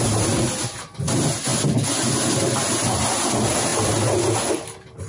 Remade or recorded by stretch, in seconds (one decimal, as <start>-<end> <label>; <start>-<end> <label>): 0.0-5.1 recorded